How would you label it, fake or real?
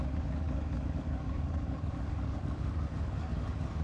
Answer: fake